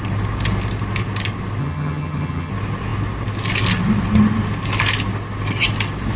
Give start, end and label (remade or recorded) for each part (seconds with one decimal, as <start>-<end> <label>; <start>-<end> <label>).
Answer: 0.0-1.6 recorded; 1.6-2.5 remade; 2.5-6.2 recorded

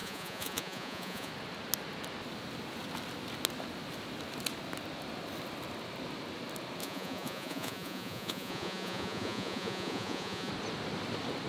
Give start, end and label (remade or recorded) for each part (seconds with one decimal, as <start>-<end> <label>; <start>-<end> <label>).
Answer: 0.0-1.3 remade; 1.3-6.8 recorded; 6.8-10.5 remade; 10.5-11.5 recorded

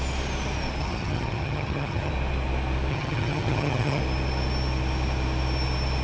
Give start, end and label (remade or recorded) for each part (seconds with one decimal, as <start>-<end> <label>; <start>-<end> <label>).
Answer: 0.0-0.8 recorded; 0.8-2.1 remade; 2.1-2.9 recorded; 2.9-4.0 remade; 4.0-6.0 recorded

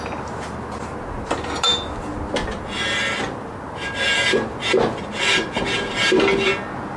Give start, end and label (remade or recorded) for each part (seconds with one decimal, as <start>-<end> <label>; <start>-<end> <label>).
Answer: 0.0-7.0 recorded

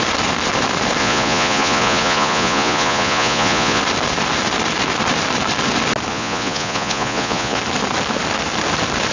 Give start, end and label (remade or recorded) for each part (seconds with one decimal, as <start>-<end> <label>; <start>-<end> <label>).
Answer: 0.0-1.0 recorded; 1.0-3.8 remade; 3.8-6.1 recorded; 6.1-7.6 remade; 7.6-9.1 recorded

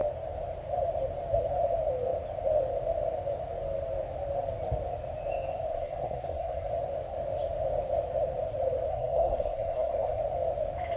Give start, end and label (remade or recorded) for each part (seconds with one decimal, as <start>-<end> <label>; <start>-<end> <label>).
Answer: 0.0-5.7 recorded; 5.7-6.7 remade; 6.7-8.9 recorded; 8.9-10.2 remade; 10.2-11.0 recorded

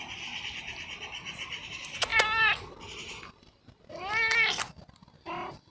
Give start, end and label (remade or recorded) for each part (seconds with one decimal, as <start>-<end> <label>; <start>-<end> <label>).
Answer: 0.0-5.7 recorded